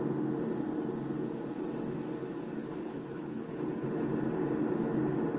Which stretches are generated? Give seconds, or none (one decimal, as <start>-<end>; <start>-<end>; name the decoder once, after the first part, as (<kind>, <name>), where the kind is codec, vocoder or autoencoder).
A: 2.6-4.1 (codec, HILCodec)